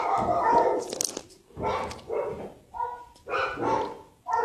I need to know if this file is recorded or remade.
recorded